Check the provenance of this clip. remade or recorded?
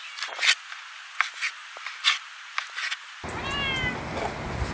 recorded